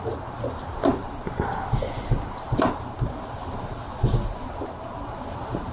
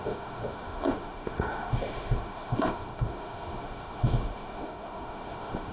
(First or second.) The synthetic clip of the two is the second